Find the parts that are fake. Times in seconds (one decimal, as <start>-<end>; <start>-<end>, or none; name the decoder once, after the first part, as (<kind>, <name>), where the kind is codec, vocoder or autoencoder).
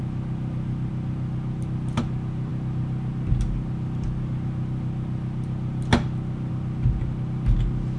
none